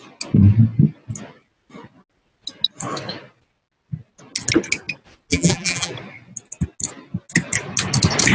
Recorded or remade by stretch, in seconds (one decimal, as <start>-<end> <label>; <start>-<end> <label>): 0.0-5.3 recorded; 5.3-5.9 remade; 5.9-8.3 recorded